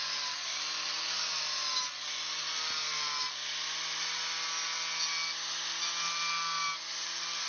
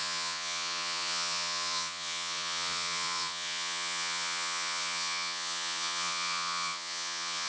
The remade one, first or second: second